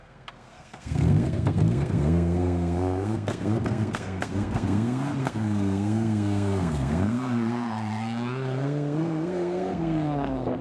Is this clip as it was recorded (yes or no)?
no